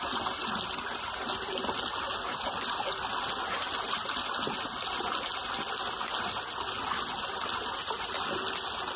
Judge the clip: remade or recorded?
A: recorded